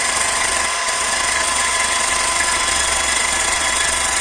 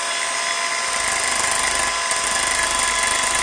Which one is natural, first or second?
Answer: second